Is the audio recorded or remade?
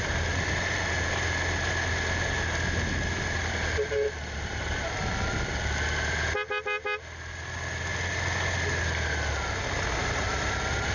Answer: recorded